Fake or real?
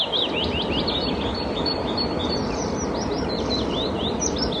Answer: real